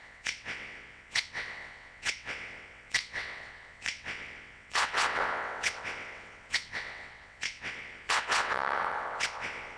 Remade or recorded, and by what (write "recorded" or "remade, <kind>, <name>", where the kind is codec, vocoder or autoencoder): remade, vocoder, WaveNeXt